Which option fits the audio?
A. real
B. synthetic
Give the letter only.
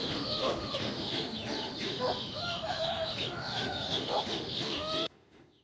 B